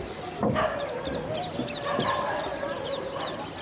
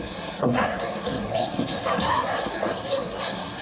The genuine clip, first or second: first